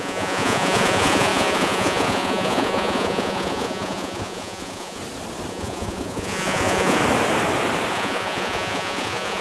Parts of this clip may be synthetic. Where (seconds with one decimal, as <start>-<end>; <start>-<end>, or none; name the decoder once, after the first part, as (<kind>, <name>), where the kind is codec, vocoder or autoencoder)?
0.0-5.0 (vocoder, Vocos); 5.5-7.0; 7.9-9.4